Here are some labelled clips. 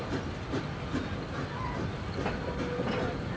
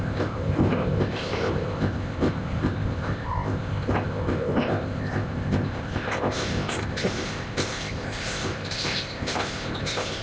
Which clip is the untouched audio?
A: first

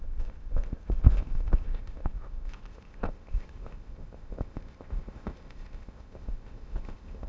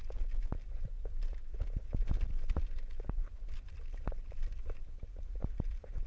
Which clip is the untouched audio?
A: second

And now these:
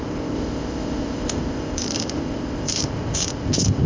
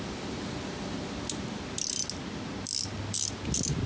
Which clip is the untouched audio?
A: second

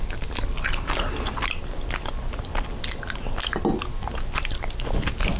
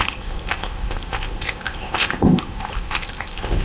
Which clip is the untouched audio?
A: first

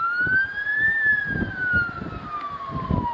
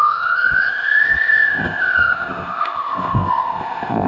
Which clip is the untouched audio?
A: first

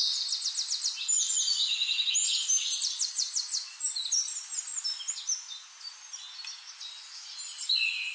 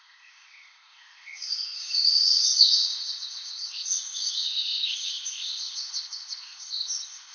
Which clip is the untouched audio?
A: first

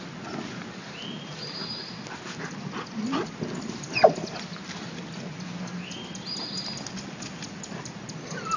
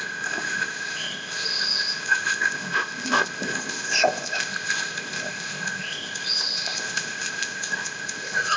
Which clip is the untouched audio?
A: first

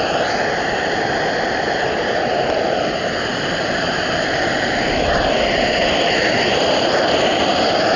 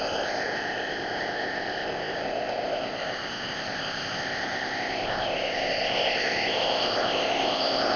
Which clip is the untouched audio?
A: first